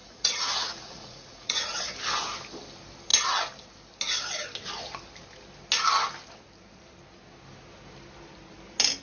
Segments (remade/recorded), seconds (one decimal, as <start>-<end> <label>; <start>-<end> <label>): 0.0-1.8 remade; 1.8-9.0 recorded